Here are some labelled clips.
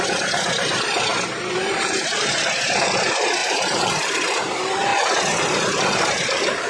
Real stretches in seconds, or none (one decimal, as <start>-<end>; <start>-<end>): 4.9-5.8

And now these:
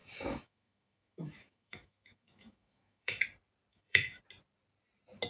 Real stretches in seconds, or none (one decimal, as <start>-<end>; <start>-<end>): 3.2-3.7; 4.2-5.3

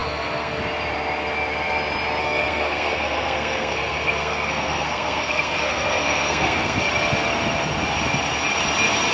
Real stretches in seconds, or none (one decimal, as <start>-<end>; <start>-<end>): 0.6-2.2; 6.9-9.1

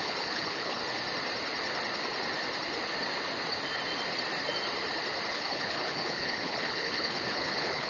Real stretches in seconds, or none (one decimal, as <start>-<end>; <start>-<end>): 0.8-5.3

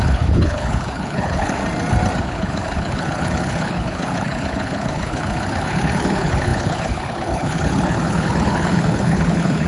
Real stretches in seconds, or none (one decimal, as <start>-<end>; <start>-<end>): 1.6-2.2

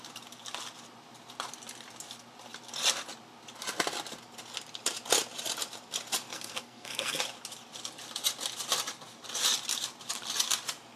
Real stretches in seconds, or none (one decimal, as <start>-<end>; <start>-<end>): 0.0-6.3; 7.2-11.0

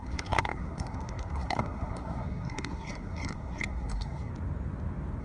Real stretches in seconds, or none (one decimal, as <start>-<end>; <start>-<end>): 4.3-5.2